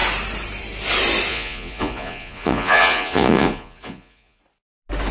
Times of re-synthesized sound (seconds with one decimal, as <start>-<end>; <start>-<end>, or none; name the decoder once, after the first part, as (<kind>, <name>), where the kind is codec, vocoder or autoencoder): 1.3-4.4 (vocoder, Vocos)